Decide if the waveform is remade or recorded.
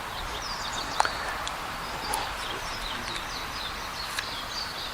recorded